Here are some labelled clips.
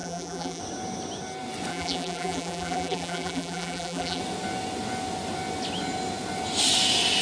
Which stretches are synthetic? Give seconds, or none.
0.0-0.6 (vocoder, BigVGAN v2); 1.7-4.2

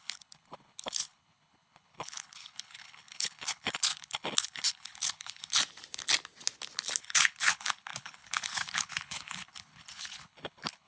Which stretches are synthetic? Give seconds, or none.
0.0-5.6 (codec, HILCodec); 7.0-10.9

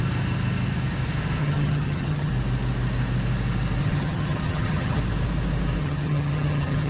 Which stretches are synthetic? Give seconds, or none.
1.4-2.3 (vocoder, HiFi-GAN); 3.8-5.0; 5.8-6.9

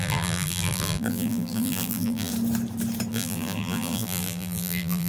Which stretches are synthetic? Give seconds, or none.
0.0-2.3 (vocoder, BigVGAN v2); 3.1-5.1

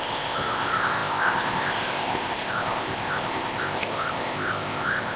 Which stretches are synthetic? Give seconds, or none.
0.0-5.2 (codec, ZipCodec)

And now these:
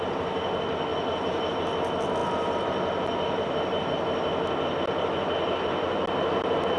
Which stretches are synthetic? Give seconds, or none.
none